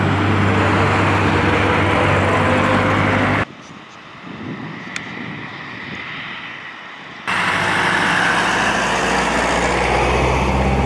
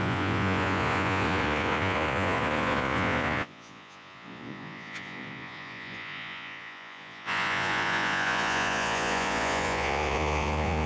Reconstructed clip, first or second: second